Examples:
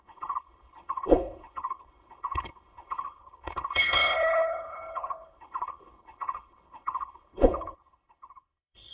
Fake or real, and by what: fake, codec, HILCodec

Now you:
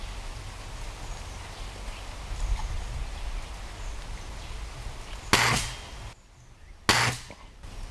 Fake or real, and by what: real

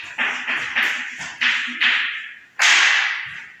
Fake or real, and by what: real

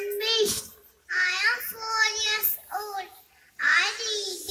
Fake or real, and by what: real